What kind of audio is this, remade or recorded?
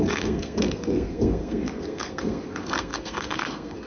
remade